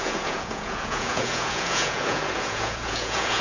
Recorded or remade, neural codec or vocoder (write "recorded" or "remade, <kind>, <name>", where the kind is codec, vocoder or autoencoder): remade, vocoder, Vocos